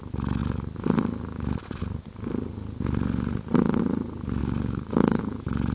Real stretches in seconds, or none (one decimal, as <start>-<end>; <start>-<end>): 0.0-4.4; 5.2-5.7